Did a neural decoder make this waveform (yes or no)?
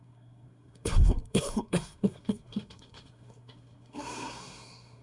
yes